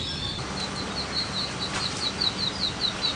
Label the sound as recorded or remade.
recorded